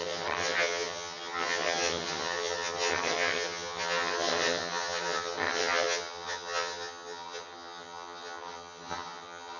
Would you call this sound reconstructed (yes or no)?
yes